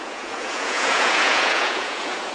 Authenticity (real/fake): fake